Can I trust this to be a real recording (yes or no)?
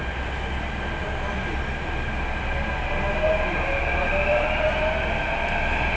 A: yes